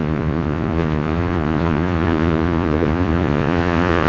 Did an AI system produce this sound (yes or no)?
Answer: yes